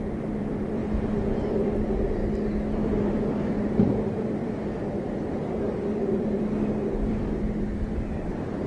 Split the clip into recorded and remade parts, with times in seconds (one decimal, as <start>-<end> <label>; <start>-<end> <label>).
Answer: 0.0-0.8 remade; 0.8-1.5 recorded; 1.5-2.2 remade; 2.2-2.9 recorded; 2.9-8.7 remade